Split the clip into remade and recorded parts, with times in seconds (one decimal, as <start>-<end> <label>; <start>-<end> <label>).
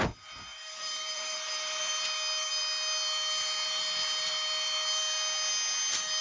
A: 0.0-0.5 recorded; 0.5-1.9 remade; 1.9-6.2 recorded